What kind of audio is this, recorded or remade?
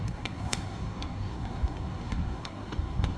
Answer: remade